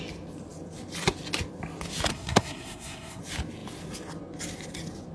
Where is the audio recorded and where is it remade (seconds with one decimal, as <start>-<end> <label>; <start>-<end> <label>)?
0.0-2.1 recorded; 2.1-3.2 remade; 3.2-5.1 recorded